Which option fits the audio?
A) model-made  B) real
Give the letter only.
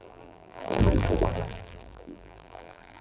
A